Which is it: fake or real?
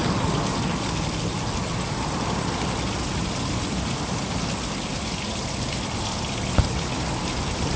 real